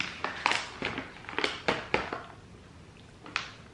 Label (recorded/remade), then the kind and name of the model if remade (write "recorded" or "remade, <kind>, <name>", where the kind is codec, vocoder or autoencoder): recorded